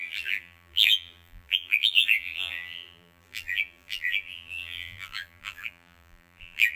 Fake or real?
fake